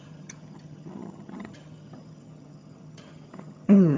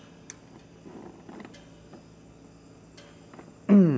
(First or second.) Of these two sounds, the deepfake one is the first